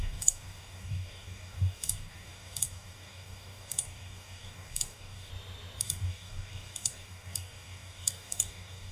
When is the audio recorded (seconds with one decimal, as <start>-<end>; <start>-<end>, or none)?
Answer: 5.3-5.8